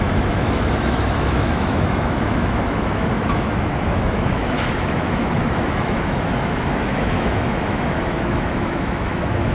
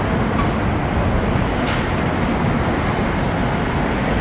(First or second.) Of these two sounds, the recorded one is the second